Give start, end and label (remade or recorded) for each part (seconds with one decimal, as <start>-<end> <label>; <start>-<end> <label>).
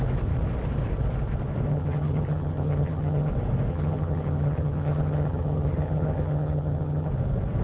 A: 0.0-1.7 recorded; 1.7-3.3 remade; 3.3-3.7 recorded; 3.7-7.1 remade; 7.1-7.6 recorded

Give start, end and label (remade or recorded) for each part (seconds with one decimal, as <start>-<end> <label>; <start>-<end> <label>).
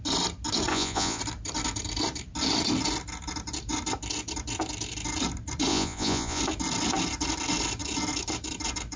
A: 0.0-0.7 recorded; 0.7-1.2 remade; 1.2-5.7 recorded; 5.7-6.4 remade; 6.4-9.0 recorded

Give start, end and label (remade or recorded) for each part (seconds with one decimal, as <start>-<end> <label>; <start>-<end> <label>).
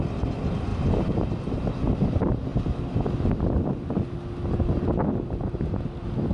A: 0.0-0.7 recorded; 0.7-1.3 remade; 1.3-6.3 recorded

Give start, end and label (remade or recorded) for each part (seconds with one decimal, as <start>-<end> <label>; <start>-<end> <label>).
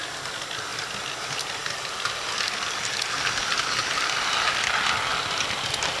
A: 0.0-6.0 recorded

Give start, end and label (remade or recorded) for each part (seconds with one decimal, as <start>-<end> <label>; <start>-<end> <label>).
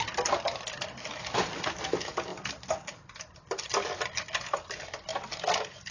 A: 0.0-2.3 recorded; 2.3-3.7 remade; 3.7-5.9 recorded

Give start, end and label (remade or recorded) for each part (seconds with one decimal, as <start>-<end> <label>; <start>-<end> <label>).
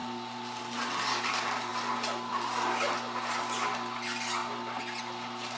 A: 0.0-0.6 remade; 0.6-5.6 recorded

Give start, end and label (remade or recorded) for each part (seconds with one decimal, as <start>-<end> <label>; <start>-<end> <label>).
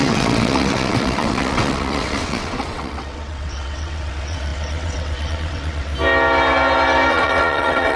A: 0.0-5.9 remade; 5.9-7.1 recorded; 7.1-8.0 remade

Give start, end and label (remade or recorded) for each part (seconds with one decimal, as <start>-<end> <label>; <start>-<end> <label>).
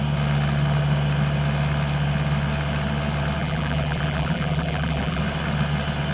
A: 0.0-3.4 recorded; 3.4-5.2 remade; 5.2-6.1 recorded